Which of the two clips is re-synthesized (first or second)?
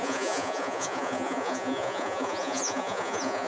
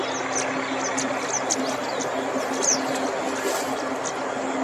first